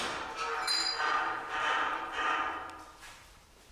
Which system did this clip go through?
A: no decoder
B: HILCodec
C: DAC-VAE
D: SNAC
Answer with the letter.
A